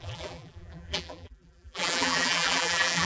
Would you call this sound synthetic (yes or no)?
yes